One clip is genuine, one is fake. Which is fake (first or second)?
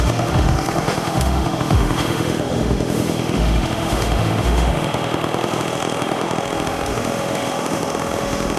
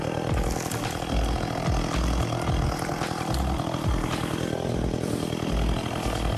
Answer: first